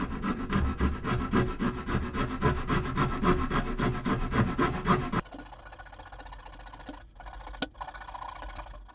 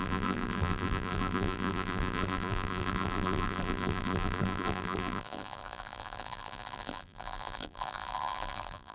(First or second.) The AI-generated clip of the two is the second